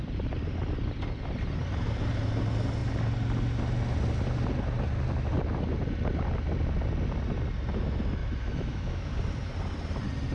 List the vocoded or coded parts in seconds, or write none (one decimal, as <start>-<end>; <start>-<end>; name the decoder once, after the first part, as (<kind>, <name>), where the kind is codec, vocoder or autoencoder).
8.2-9.2 (autoencoder, DAC-VAE)